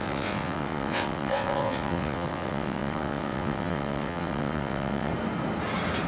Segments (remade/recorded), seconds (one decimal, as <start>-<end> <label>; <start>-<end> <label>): 0.0-5.1 remade; 5.1-6.1 recorded